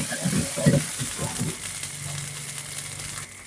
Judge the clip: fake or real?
real